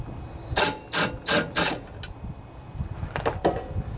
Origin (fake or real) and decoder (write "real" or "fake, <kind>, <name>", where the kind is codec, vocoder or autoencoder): real